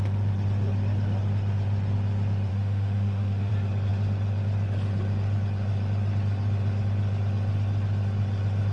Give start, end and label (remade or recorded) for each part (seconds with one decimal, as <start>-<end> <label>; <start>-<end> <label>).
0.0-2.5 recorded; 2.5-3.5 remade; 3.5-8.7 recorded